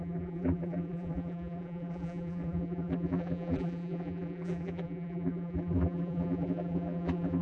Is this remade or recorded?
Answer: remade